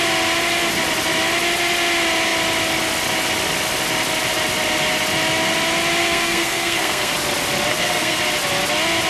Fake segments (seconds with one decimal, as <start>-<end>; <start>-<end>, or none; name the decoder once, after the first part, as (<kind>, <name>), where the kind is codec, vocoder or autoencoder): 6.0-7.1 (codec, SNAC); 7.7-8.2

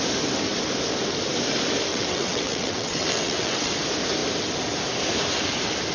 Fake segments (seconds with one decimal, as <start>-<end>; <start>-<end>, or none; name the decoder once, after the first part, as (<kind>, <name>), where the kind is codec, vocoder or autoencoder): 1.9-3.7 (vocoder, WaveNeXt)

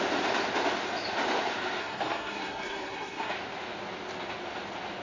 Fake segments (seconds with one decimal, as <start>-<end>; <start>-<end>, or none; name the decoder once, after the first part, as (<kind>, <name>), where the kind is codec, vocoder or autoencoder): 1.8-3.3 (codec, SNAC)